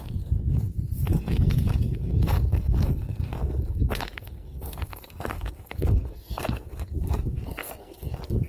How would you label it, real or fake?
fake